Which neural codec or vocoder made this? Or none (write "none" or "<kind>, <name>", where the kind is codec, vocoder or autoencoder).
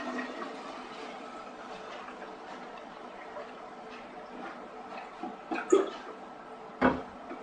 none